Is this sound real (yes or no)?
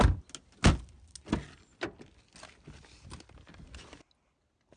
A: yes